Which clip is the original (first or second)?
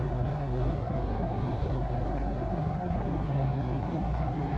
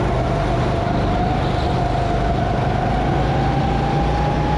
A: second